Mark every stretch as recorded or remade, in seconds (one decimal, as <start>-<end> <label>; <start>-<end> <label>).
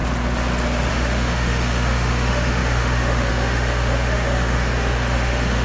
0.0-0.9 recorded; 0.9-5.6 remade